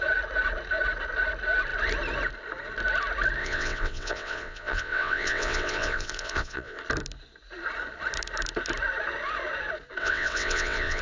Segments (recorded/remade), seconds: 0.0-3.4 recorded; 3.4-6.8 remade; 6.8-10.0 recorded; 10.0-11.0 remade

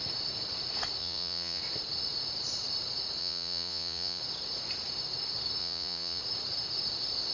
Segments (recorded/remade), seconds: 0.0-1.0 recorded; 1.0-1.6 remade; 1.6-3.2 recorded; 3.2-4.2 remade; 4.2-5.6 recorded; 5.6-6.2 remade; 6.2-7.3 recorded

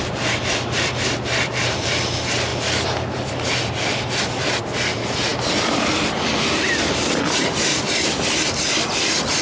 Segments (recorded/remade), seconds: 0.0-5.3 remade; 5.3-7.5 recorded; 7.5-9.4 remade

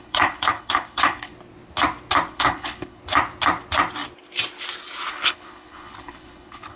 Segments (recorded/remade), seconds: 0.0-1.3 remade; 1.3-2.3 recorded; 2.3-3.0 remade; 3.0-5.1 recorded; 5.1-6.8 remade

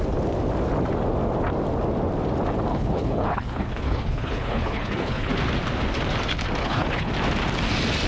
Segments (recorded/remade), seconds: 0.0-2.7 recorded; 2.7-5.3 remade; 5.3-6.6 recorded; 6.6-7.1 remade; 7.1-8.1 recorded

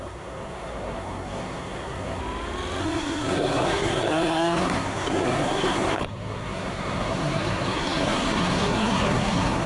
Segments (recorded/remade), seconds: 0.0-2.2 remade; 2.2-2.8 recorded; 2.8-9.7 remade

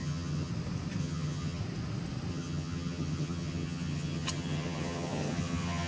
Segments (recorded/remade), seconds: 0.0-0.5 remade; 0.5-1.0 recorded; 1.0-1.6 remade; 1.6-2.3 recorded; 2.3-5.9 remade